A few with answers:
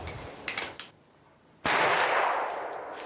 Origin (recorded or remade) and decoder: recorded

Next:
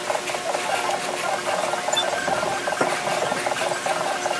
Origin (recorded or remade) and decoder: recorded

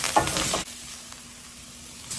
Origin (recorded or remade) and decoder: recorded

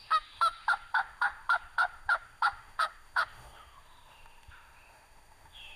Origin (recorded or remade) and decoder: remade, autoencoder, DAC-VAE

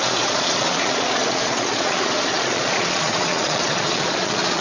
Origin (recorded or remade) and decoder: remade, vocoder, Vocos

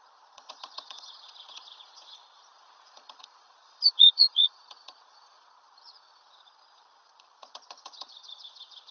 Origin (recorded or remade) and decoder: remade, vocoder, Vocos